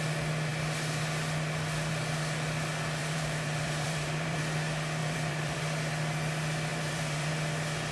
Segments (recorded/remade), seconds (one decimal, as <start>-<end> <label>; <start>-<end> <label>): 0.0-3.0 recorded; 3.0-4.4 remade; 4.4-5.0 recorded; 5.0-5.6 remade; 5.6-6.7 recorded; 6.7-7.3 remade; 7.3-7.9 recorded